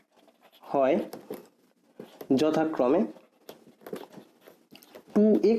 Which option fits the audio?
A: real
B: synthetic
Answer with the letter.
A